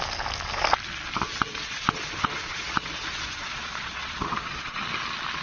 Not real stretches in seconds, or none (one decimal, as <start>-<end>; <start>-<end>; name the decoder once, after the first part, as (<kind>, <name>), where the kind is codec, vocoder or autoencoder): 1.6-4.8 (vocoder, Vocos)

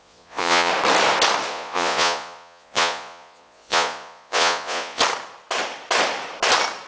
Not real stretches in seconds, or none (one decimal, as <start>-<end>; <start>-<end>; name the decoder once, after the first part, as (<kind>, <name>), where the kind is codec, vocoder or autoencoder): 0.0-0.7 (vocoder, Vocos); 1.5-5.0

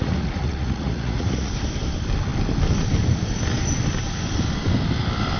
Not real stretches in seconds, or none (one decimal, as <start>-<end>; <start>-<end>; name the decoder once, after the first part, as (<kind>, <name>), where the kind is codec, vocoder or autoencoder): 0.0-1.5 (vocoder, Vocos)